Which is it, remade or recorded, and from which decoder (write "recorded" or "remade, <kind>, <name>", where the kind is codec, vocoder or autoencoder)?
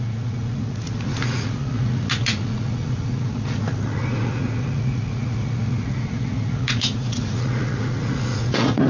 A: remade, vocoder, Vocos